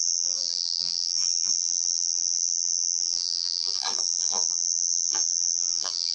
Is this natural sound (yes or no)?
no